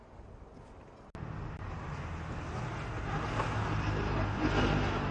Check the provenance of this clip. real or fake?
real